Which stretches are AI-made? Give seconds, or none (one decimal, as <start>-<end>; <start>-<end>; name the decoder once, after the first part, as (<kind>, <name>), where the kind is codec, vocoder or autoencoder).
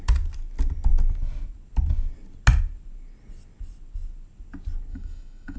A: 4.9-5.6 (autoencoder, DAC-VAE)